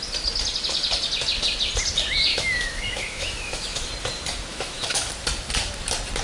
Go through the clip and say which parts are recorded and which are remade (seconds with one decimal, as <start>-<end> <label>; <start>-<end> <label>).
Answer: 0.0-2.3 recorded; 2.3-3.9 remade; 3.9-4.5 recorded; 4.5-5.1 remade; 5.1-6.2 recorded